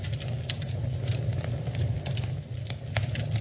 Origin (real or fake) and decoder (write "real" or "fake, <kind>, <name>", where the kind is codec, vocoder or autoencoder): real